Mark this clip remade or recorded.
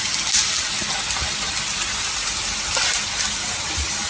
recorded